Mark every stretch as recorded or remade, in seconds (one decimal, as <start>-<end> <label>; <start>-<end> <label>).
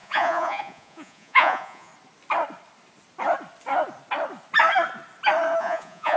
0.0-1.9 remade; 1.9-5.6 recorded; 5.6-6.2 remade